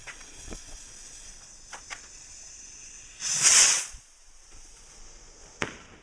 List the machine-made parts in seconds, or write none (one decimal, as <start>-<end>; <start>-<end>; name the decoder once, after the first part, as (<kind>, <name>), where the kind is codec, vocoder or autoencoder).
0.0-3.1 (vocoder, Vocos); 3.6-5.0